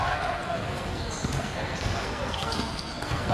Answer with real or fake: fake